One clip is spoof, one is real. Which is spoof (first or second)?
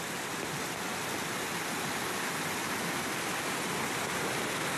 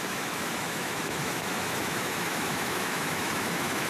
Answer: second